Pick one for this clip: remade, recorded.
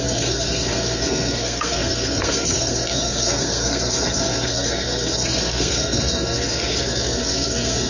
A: remade